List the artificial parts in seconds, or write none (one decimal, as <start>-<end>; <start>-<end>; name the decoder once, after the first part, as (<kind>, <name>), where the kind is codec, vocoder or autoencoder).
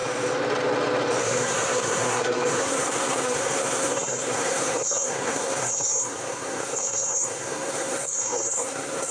1.2-9.1 (codec, SNAC)